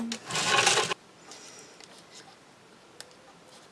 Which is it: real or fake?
real